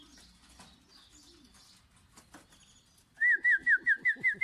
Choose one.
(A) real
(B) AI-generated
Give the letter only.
A